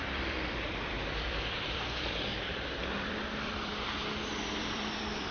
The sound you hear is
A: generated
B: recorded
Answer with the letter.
A